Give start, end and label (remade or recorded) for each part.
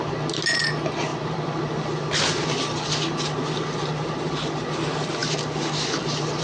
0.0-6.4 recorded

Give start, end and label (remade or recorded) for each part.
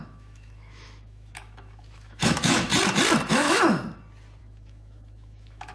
0.0-2.7 remade; 2.7-3.3 recorded; 3.3-3.8 remade; 3.8-4.4 recorded; 4.4-5.7 remade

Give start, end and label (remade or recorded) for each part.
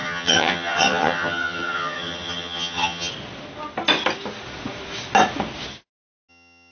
0.0-3.1 remade; 3.1-6.3 recorded; 6.3-6.7 remade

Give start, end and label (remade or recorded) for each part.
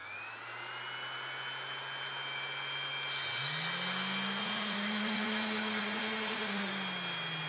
0.0-4.4 recorded; 4.4-6.7 remade; 6.7-7.5 recorded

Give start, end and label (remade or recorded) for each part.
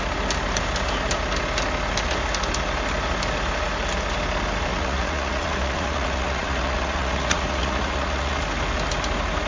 0.0-4.7 recorded; 4.7-8.4 remade; 8.4-9.5 recorded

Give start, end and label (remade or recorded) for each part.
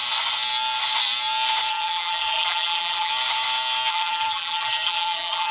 0.0-1.7 recorded; 1.7-3.1 remade; 3.1-3.9 recorded; 3.9-5.5 remade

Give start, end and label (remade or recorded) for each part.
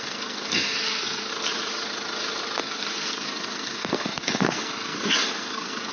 0.0-1.3 remade; 1.3-2.6 recorded; 2.6-5.9 remade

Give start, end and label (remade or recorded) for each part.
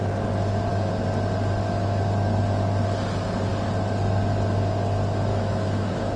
0.0-5.3 recorded; 5.3-6.2 remade